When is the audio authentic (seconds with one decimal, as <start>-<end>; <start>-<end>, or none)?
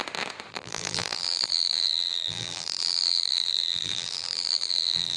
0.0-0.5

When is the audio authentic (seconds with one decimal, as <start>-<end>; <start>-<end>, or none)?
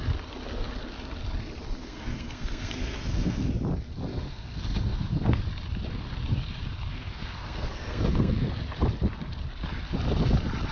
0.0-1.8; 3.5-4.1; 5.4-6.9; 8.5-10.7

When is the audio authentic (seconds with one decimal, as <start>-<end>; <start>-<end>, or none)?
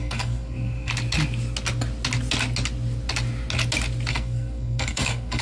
0.9-4.1